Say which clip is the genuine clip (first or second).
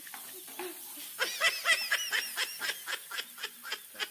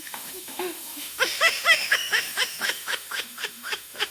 first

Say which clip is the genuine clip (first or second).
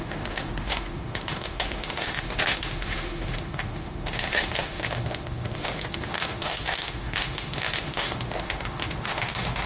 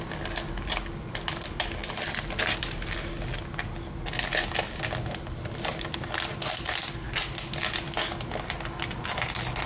second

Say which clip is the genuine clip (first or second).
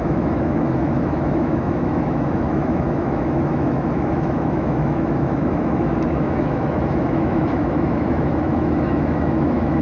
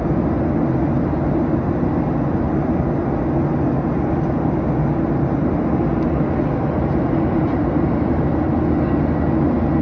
second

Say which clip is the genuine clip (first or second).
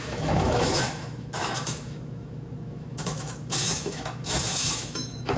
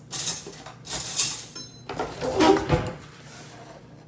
second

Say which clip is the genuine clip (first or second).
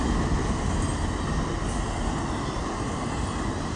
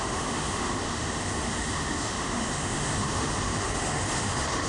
first